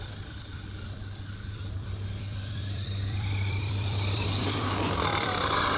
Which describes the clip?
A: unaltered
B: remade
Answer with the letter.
B